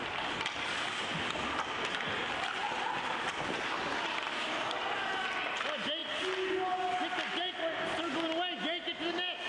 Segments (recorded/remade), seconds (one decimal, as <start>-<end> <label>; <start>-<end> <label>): 0.0-9.5 recorded